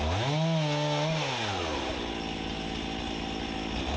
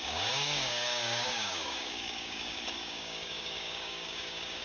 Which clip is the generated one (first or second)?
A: second